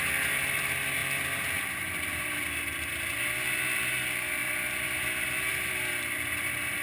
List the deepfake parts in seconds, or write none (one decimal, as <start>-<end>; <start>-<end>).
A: 4.4-5.9